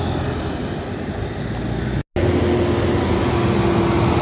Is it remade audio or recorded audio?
recorded